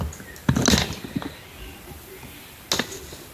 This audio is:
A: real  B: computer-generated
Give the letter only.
A